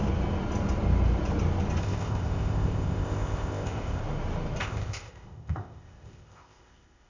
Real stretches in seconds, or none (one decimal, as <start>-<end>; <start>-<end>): 0.0-1.8; 4.0-4.6